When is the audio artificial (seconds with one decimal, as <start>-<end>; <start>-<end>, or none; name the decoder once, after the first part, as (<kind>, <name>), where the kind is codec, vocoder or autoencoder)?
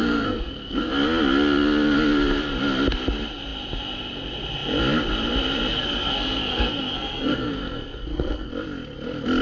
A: 0.0-0.9 (codec, SNAC); 5.7-8.5